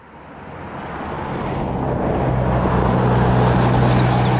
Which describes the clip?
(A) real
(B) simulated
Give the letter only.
A